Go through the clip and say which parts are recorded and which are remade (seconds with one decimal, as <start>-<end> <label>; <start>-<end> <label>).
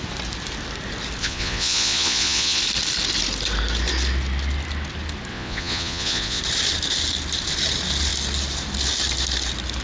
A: 0.0-1.2 recorded; 1.2-2.6 remade; 2.6-5.3 recorded; 5.3-6.4 remade; 6.4-9.8 recorded